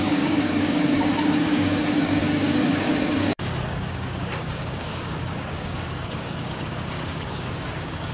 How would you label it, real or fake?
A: fake